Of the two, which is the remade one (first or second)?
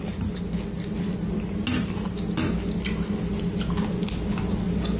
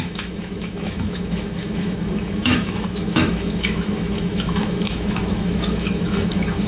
second